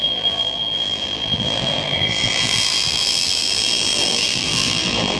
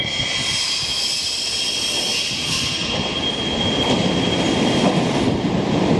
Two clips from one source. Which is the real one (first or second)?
second